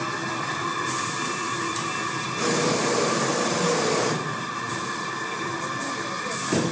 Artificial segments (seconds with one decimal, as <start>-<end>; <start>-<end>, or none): 0.0-5.5